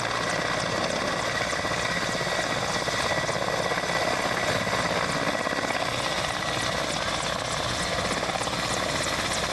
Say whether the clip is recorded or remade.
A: recorded